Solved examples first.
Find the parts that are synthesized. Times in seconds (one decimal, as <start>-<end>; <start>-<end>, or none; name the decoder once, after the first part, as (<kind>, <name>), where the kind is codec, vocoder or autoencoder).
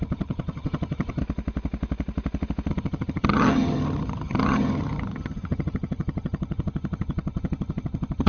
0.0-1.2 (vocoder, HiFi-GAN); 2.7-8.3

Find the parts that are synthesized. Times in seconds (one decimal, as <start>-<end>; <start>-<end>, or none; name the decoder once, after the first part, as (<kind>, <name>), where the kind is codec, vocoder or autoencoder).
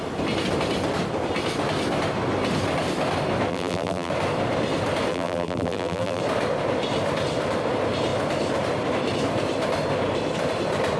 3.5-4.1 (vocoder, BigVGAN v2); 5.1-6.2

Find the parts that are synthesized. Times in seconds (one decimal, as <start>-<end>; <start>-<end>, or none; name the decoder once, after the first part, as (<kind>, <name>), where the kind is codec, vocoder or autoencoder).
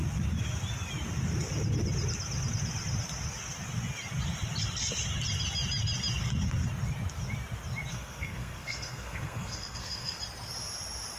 7.9-10.2 (codec, SNAC)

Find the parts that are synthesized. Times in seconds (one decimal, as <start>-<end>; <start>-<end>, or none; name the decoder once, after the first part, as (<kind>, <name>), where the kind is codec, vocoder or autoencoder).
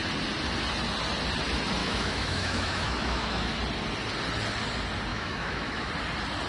1.8-3.6 (autoencoder, DAC-VAE); 5.1-5.9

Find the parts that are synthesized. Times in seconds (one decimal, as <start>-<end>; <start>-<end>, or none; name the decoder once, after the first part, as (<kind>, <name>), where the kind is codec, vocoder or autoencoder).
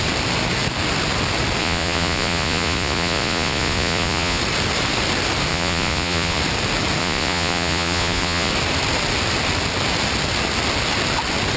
1.6-4.4 (vocoder, Vocos); 5.5-6.4; 7.0-8.5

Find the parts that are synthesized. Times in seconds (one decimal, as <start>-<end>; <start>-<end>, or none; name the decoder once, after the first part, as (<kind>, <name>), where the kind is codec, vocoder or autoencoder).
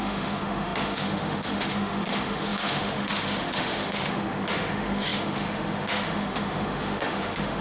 0.0-7.6 (autoencoder, DAC-VAE)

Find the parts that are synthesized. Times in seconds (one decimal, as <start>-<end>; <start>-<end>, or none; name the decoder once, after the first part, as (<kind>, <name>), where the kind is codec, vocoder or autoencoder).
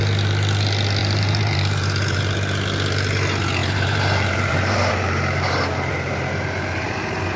1.0-2.2 (vocoder, BigVGAN v2); 3.6-7.4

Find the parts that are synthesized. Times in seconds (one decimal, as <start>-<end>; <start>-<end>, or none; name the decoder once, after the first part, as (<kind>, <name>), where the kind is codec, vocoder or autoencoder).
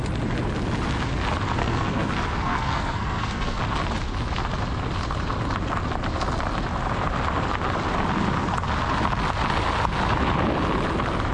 1.6-3.6 (codec, SNAC)